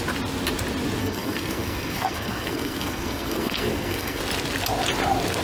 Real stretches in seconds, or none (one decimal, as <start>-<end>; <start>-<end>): 0.0-1.0; 4.2-5.4

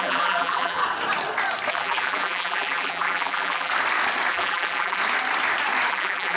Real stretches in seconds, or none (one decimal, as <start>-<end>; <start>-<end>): 0.8-1.7; 3.7-4.3; 5.0-5.9

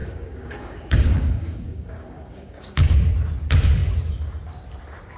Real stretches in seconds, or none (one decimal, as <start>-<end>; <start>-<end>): 3.1-5.2